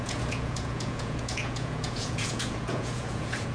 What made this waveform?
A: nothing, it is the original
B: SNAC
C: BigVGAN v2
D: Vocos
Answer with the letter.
D